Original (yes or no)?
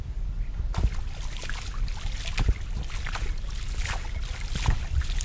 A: yes